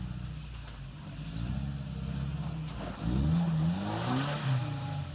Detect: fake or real real